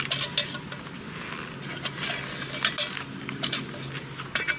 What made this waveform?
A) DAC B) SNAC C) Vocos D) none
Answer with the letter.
D